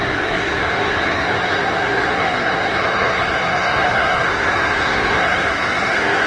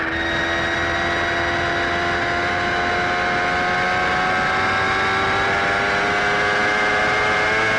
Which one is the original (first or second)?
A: second